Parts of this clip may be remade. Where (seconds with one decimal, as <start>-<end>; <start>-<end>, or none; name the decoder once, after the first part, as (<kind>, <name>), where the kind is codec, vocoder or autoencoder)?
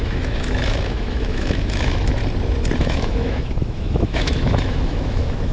0.0-2.2 (autoencoder, DAC-VAE); 2.8-5.5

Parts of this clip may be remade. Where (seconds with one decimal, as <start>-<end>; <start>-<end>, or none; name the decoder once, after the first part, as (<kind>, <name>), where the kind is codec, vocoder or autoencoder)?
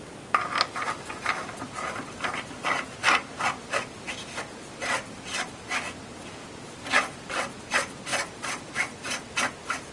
none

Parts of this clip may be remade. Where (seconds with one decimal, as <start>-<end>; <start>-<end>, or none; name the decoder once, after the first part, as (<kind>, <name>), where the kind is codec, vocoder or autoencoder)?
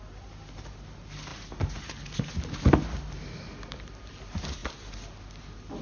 none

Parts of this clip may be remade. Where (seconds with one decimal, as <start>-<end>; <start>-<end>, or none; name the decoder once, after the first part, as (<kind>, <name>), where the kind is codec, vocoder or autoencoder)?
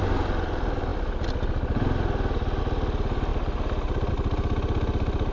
none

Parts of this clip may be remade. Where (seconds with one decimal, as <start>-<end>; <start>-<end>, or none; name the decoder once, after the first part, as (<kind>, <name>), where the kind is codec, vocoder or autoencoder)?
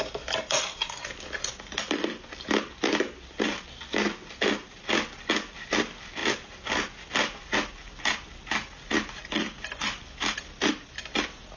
none